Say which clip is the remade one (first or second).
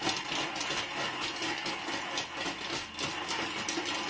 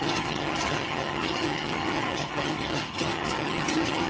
second